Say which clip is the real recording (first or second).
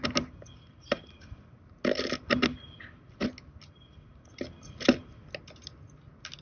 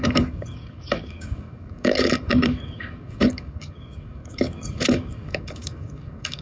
first